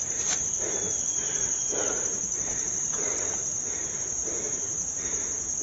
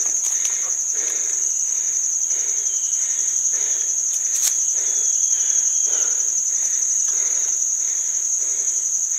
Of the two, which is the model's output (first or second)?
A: first